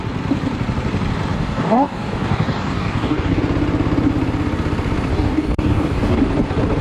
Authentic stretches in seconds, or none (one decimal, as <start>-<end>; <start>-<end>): 0.0-1.3; 3.4-5.1; 6.2-6.8